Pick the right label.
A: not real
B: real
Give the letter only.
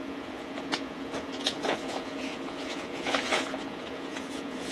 A